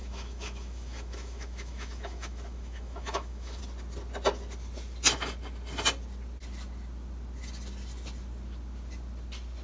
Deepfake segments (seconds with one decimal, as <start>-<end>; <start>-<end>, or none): 0.0-3.6